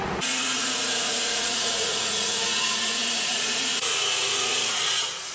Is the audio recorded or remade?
remade